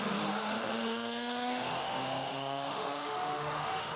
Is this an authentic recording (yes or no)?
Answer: no